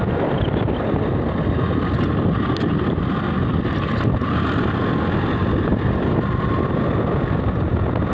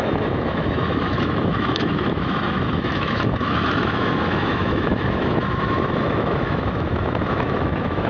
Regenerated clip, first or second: second